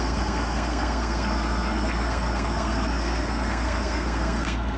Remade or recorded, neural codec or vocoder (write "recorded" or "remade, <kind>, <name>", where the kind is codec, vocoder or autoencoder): remade, codec, SNAC